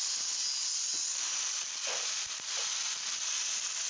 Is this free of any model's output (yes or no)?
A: yes